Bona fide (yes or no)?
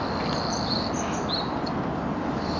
yes